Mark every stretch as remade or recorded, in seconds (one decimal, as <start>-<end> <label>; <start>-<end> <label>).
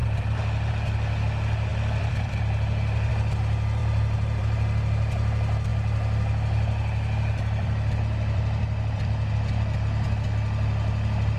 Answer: 0.0-0.7 remade; 0.7-1.7 recorded; 1.7-3.1 remade; 3.1-3.8 recorded; 3.8-4.4 remade; 4.4-5.7 recorded; 5.7-9.3 remade; 9.3-11.4 recorded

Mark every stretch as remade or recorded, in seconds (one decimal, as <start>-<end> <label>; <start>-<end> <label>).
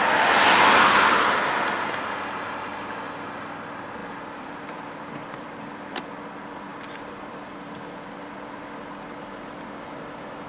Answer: 0.0-4.0 recorded; 4.0-6.2 remade; 6.2-6.7 recorded; 6.7-7.3 remade; 7.3-10.5 recorded